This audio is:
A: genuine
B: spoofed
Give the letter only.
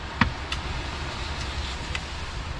A